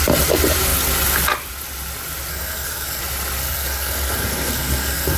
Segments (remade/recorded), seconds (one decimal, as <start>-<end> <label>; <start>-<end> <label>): 0.0-2.3 recorded; 2.3-3.0 remade; 3.0-3.4 recorded; 3.4-5.2 remade